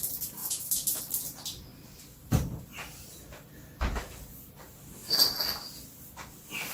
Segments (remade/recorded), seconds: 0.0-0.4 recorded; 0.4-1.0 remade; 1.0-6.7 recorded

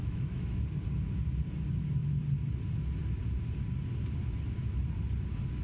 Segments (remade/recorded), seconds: 0.0-0.6 remade; 0.6-5.6 recorded

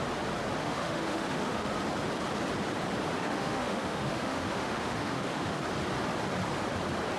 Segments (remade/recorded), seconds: 0.0-0.6 recorded; 0.6-1.7 remade; 1.7-3.2 recorded; 3.2-5.6 remade; 5.6-7.2 recorded